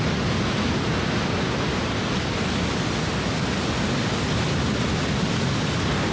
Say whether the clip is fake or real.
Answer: real